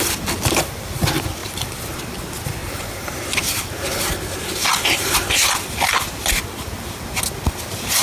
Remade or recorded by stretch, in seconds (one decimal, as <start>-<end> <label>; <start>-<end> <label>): 0.0-1.4 recorded; 1.4-2.0 remade; 2.0-2.6 recorded; 2.6-3.4 remade; 3.4-8.0 recorded